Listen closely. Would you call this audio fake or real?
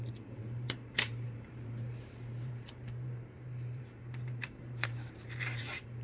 fake